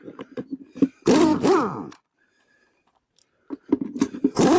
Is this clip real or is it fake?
fake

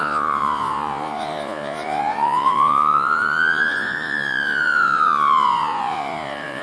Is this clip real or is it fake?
fake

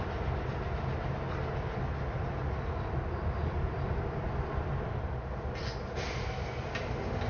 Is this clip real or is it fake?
real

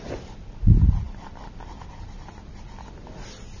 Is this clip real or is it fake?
real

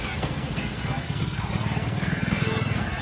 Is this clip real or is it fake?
fake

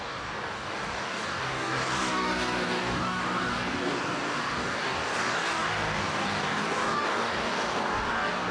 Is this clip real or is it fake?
fake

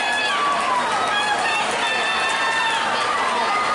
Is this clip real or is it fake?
real